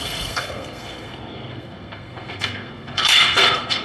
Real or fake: fake